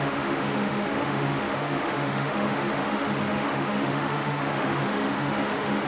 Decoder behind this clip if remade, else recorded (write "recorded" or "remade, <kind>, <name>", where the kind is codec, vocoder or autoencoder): remade, autoencoder, DAC-VAE